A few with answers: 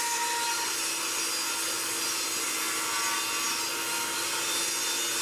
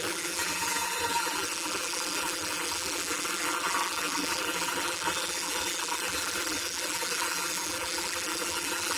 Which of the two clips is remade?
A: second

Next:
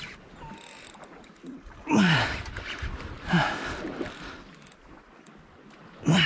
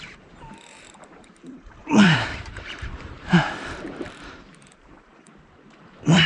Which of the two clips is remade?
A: second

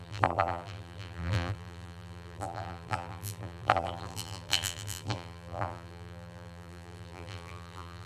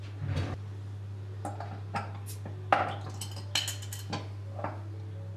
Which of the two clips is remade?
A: first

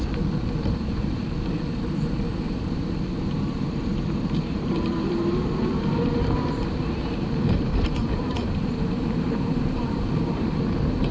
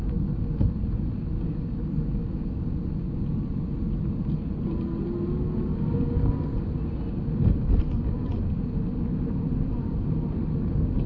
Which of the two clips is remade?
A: first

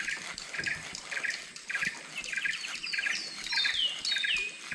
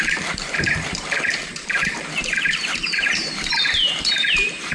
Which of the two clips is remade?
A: second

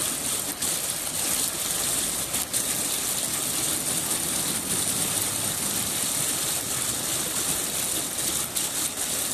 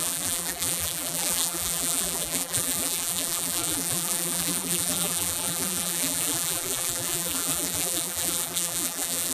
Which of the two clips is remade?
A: second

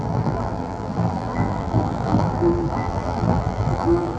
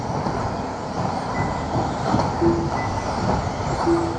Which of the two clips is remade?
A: first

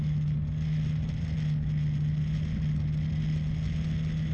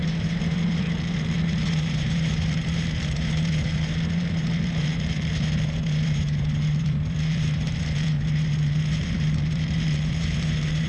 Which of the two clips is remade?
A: second